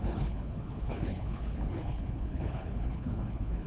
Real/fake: fake